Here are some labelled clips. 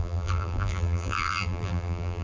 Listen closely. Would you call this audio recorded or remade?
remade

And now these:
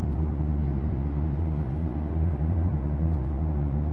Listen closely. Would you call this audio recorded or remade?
remade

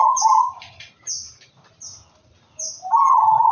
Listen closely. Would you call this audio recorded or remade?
remade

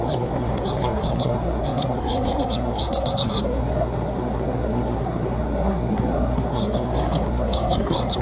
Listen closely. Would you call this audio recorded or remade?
remade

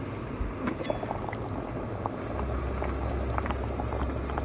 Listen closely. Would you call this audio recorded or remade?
recorded